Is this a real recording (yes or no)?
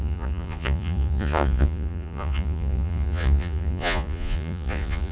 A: no